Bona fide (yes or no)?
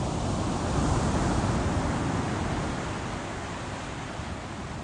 yes